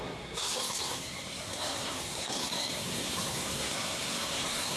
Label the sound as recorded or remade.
remade